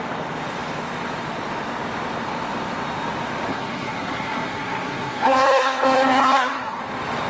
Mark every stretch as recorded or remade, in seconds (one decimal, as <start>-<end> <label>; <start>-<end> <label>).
0.0-3.5 recorded; 3.5-6.8 remade; 6.8-7.3 recorded